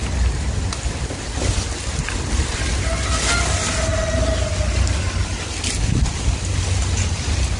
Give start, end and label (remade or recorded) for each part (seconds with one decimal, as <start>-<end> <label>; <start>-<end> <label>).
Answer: 0.0-7.6 recorded